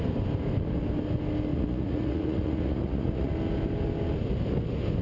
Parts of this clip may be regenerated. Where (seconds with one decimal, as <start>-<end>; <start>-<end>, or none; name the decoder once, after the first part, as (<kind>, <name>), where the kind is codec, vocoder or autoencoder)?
1.5-3.3 (vocoder, Vocos)